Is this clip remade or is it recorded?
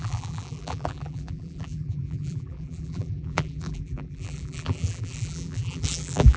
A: remade